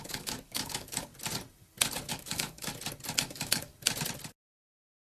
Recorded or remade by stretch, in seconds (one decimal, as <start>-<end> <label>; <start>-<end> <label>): 0.0-1.1 remade; 1.1-2.1 recorded; 2.1-2.7 remade; 2.7-3.2 recorded; 3.2-3.7 remade; 3.7-4.4 recorded; 4.4-5.0 remade